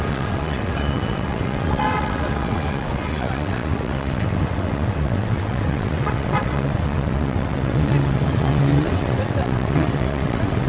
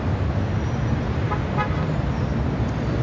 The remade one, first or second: first